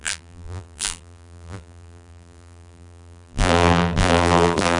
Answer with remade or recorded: remade